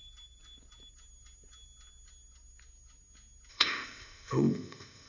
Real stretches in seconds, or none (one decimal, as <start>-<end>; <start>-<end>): 0.0-3.5